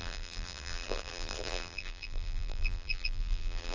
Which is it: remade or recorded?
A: remade